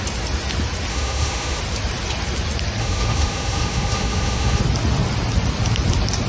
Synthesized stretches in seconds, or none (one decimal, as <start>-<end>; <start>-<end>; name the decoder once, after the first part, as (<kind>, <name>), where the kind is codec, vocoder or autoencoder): 0.9-1.6 (autoencoder, DAC-VAE); 2.8-4.6